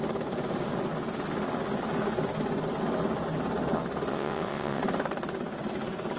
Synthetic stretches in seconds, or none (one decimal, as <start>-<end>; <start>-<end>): 4.1-4.8